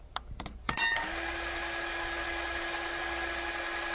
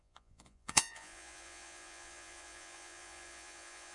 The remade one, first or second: second